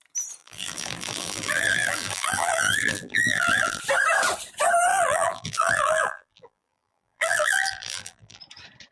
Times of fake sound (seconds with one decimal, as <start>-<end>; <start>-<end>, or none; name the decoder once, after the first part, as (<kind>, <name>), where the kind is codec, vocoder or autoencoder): 0.4-3.8 (vocoder, BigVGAN v2); 4.9-8.4